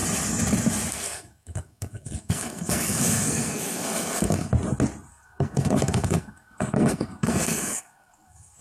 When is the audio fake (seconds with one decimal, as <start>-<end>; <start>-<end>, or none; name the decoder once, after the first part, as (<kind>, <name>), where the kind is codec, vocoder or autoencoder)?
0.9-4.5 (codec, SNAC); 5.1-8.6